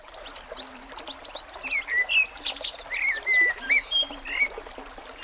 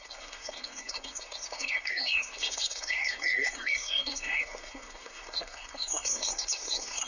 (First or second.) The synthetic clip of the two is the second